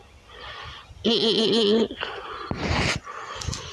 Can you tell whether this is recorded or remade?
recorded